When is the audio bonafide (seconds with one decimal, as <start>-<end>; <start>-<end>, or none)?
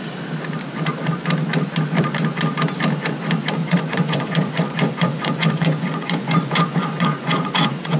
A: 0.0-3.6